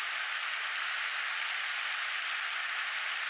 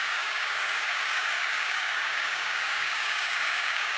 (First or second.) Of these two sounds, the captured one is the first